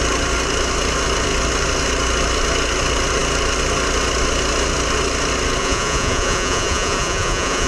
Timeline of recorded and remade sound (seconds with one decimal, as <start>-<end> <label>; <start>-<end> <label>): 0.0-5.6 recorded; 5.6-7.7 remade